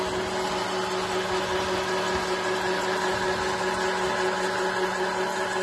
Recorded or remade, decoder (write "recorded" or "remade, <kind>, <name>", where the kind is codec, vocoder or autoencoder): recorded